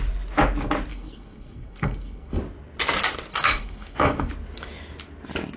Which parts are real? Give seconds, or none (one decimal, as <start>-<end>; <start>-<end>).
0.0-0.9; 2.4-3.3; 4.3-5.6